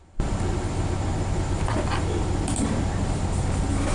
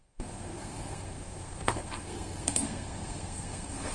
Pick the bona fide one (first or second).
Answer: first